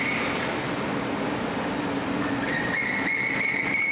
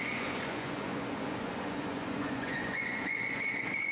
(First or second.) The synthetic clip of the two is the second